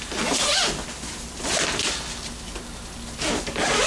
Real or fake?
real